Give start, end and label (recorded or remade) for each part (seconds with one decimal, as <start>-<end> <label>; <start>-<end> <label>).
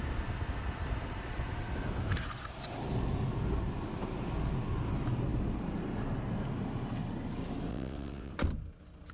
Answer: 0.0-7.7 recorded; 7.7-8.3 remade; 8.3-9.1 recorded